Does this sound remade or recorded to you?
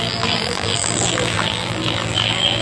remade